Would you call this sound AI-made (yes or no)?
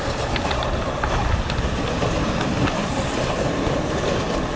no